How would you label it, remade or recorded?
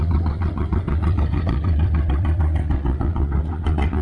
remade